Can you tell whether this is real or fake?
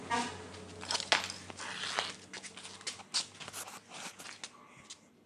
real